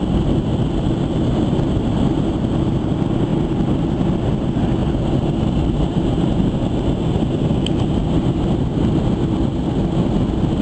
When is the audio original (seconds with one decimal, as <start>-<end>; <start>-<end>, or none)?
0.0-10.6